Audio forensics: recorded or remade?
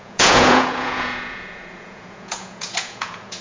remade